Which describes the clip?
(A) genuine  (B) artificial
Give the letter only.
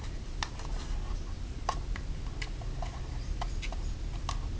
A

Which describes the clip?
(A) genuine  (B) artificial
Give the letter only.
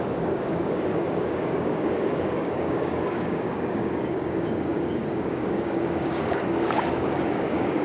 B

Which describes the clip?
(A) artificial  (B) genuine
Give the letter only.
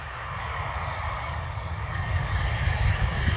A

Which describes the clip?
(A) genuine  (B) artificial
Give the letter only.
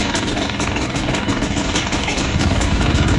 B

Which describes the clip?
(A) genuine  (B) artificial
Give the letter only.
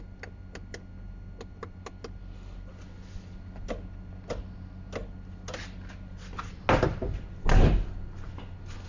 A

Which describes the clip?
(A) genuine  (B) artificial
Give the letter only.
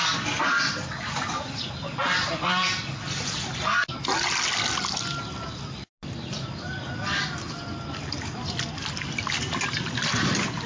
A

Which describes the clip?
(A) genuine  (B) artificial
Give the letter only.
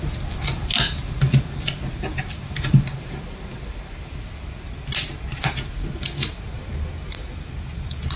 A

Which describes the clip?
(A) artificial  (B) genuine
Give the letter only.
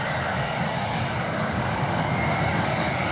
A